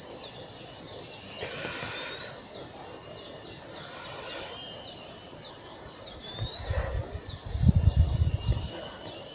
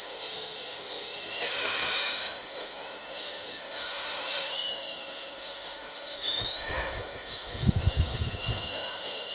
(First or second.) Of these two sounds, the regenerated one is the second